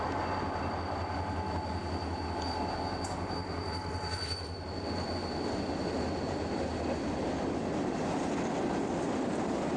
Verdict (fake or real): real